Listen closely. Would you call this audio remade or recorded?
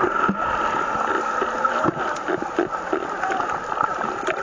remade